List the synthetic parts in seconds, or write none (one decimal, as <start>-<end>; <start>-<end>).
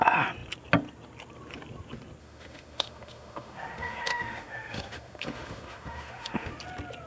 2.2-6.5